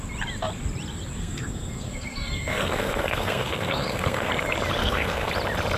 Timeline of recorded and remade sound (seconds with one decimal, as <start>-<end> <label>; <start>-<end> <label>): 0.0-1.2 recorded; 1.2-4.3 remade; 4.3-4.8 recorded; 4.8-5.3 remade; 5.3-5.8 recorded